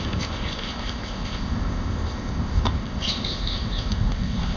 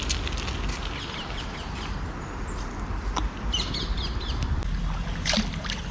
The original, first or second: second